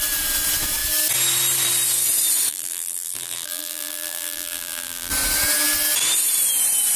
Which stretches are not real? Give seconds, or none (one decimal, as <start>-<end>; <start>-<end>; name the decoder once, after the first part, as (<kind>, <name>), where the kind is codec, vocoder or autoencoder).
2.5-5.1 (vocoder, BigVGAN v2)